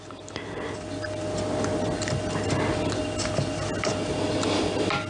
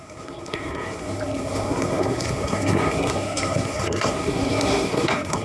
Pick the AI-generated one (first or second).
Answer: second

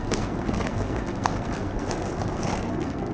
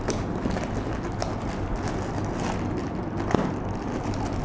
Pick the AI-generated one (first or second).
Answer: first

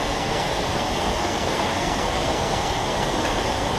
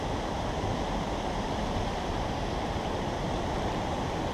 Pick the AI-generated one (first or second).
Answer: first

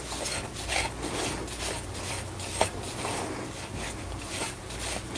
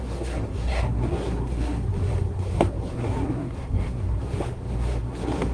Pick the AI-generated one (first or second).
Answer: second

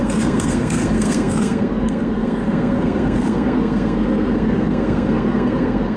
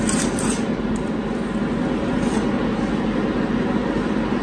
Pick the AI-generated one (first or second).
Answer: first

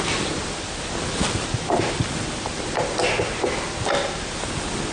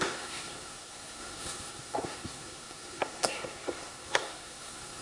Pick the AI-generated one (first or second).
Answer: second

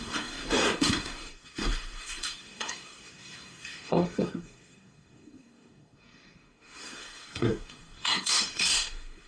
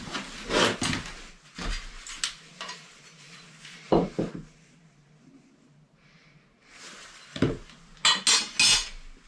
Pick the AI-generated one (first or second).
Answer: first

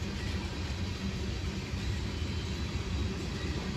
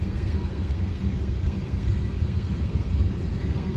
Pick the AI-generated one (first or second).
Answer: second